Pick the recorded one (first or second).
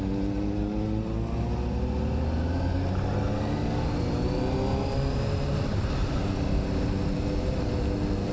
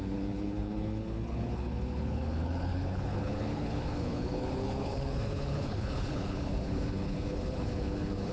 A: first